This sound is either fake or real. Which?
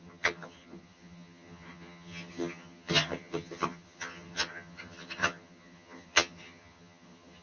fake